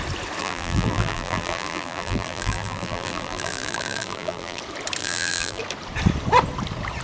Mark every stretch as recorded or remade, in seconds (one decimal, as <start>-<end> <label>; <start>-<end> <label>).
0.0-0.4 recorded; 0.4-4.6 remade; 4.6-5.0 recorded; 5.0-5.6 remade; 5.6-7.0 recorded